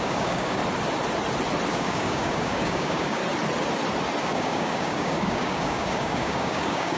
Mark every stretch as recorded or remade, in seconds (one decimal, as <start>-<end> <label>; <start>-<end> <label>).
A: 0.0-0.6 remade; 0.6-1.7 recorded; 1.7-3.2 remade; 3.2-4.2 recorded; 4.2-7.0 remade